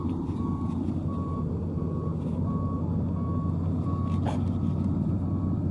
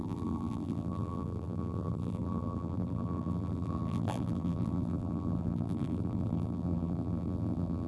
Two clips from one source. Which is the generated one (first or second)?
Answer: second